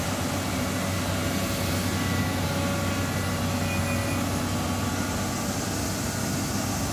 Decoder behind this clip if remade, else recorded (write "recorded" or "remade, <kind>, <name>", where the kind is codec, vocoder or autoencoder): recorded